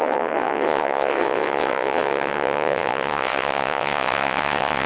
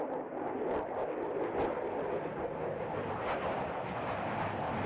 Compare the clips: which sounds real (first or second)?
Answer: second